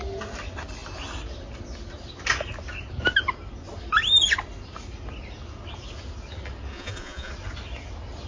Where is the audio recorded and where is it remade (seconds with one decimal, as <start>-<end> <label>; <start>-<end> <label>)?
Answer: 0.0-6.7 recorded; 6.7-7.3 remade; 7.3-8.3 recorded